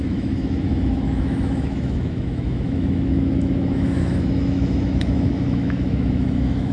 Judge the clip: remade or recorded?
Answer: remade